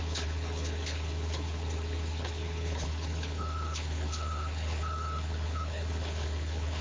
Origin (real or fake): fake